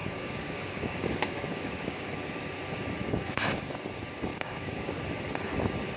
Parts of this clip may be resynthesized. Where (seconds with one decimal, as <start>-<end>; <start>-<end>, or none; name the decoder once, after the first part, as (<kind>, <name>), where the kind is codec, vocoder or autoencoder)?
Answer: 0.0-2.1 (codec, DAC); 3.0-3.6; 4.3-5.0